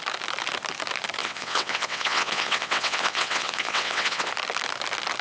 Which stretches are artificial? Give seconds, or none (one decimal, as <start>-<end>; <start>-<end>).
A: 1.2-4.3